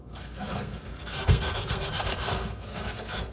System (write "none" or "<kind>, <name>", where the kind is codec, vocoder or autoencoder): codec, SNAC